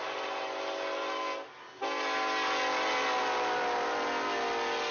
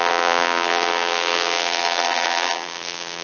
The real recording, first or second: first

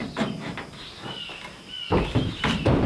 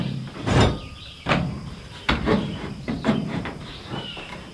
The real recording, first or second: first